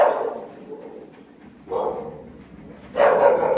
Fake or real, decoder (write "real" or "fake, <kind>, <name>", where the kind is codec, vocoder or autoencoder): real